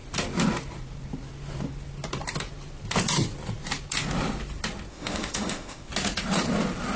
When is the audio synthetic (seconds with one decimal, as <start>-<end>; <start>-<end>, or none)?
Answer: 4.9-5.9

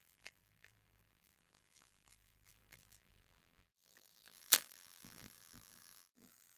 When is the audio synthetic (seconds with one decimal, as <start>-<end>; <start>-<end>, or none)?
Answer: 0.0-6.6

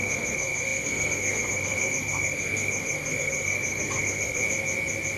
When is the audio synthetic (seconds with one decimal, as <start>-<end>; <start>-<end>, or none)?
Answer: 0.0-4.4

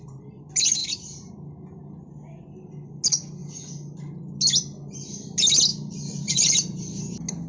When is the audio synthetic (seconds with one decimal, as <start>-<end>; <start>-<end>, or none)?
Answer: 0.8-1.3; 5.7-7.0

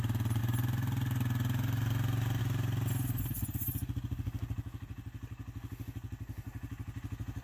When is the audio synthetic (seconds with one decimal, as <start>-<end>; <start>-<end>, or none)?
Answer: none

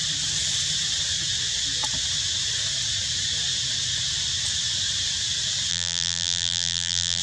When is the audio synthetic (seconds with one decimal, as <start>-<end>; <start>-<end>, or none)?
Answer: 5.7-7.2

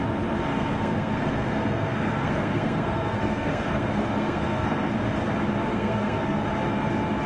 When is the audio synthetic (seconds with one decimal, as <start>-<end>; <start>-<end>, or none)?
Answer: 0.5-4.9; 5.7-6.4